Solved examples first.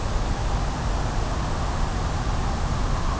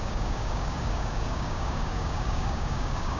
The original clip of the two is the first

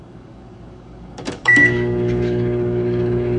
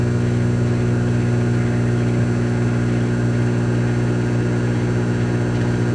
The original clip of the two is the second